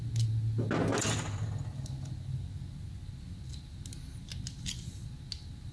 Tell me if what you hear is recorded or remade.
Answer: recorded